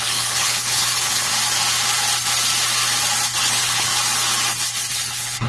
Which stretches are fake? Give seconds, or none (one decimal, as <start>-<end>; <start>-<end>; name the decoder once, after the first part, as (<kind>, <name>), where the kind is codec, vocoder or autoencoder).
0.0-1.3 (codec, HILCodec); 3.4-3.9; 4.9-5.5